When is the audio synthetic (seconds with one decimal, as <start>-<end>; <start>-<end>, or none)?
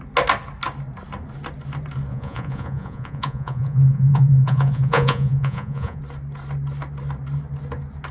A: 2.1-6.0